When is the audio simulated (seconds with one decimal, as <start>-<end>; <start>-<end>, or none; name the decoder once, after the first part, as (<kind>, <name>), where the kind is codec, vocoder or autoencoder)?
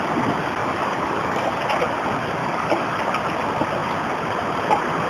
0.6-1.5 (codec, DAC); 2.4-3.0